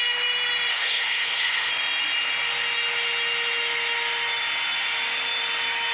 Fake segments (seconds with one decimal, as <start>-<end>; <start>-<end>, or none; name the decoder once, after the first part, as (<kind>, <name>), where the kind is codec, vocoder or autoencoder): 0.7-1.7 (codec, SNAC)